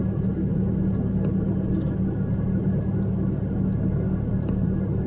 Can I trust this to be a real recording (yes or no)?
yes